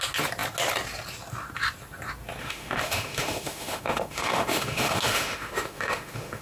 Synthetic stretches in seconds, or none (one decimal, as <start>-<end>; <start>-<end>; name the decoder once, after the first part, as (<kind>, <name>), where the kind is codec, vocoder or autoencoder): 2.4-6.4 (autoencoder, DAC-VAE)